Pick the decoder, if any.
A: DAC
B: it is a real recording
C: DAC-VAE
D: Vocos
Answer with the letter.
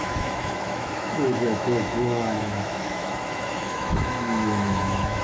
C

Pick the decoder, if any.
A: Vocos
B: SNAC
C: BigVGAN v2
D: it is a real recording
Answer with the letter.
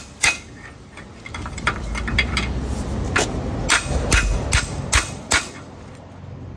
D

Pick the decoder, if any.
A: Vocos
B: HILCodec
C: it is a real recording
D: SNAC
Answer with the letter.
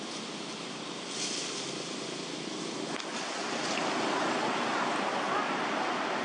C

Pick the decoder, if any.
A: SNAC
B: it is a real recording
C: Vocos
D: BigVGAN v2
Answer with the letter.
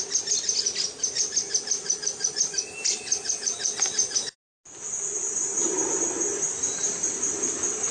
B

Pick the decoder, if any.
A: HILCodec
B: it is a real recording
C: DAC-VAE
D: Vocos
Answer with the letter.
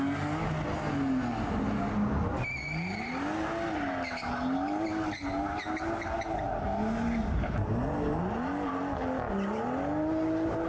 B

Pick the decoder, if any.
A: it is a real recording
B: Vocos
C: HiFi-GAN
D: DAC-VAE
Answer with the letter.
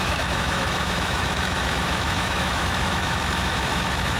D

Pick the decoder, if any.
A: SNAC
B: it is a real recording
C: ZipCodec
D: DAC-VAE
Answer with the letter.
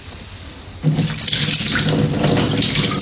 B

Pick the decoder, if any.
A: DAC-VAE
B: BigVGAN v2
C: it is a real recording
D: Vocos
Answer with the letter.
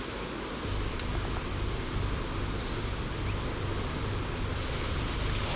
C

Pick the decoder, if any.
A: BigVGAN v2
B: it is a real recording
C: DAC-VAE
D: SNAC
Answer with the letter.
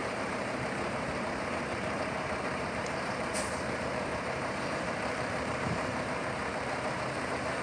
A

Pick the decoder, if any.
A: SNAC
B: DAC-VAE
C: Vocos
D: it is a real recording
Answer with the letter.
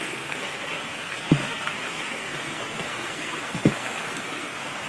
A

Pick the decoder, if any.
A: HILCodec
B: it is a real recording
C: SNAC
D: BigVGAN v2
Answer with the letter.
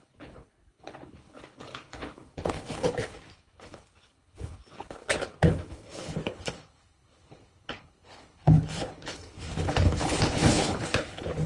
A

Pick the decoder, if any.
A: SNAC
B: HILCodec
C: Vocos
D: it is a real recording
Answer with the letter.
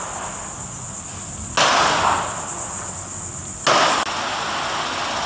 D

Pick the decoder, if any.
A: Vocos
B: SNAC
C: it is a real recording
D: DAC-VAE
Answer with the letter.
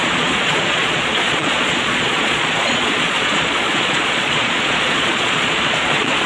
A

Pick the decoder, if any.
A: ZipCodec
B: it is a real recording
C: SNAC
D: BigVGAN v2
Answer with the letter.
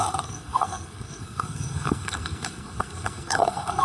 C